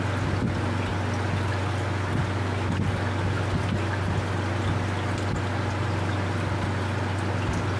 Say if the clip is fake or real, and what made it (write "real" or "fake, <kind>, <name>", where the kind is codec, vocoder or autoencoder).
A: real